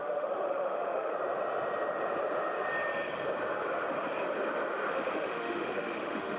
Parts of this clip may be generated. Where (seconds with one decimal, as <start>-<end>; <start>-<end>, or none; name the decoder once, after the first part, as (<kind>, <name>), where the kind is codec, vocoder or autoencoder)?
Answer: 0.0-1.1 (autoencoder, DAC-VAE); 4.9-6.4